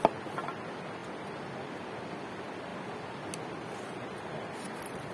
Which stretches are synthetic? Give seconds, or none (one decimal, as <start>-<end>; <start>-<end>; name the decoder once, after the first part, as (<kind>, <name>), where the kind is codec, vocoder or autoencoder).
none